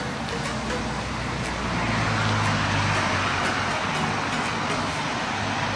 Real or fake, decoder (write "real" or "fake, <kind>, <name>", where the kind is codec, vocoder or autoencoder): real